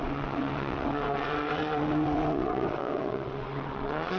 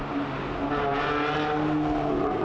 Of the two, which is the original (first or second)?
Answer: second